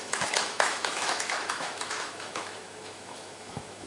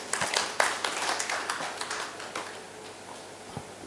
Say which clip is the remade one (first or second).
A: first